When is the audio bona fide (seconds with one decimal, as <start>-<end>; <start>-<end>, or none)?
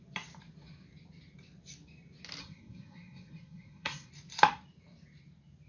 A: 0.0-2.4; 4.1-5.7